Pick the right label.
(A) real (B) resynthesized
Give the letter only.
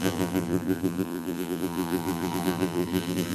B